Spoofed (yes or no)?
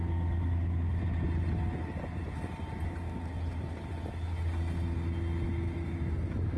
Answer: no